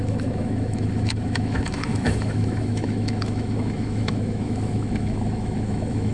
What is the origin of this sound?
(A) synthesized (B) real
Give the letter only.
A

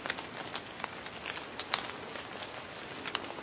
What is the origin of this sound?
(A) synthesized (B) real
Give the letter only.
B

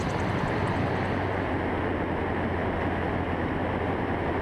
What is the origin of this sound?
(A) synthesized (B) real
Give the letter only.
B